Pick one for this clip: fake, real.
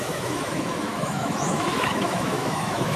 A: fake